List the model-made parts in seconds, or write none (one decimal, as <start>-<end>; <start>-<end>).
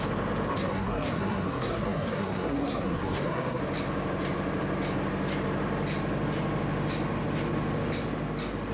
0.5-3.6